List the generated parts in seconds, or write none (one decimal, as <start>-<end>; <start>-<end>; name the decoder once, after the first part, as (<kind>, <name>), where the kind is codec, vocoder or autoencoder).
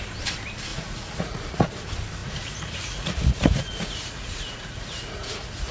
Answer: 0.7-1.8 (vocoder, Vocos); 2.2-5.7